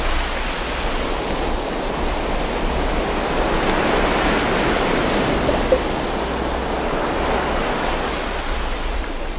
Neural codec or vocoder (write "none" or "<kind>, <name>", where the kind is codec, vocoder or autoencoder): none